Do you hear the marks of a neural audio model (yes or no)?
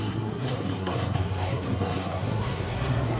yes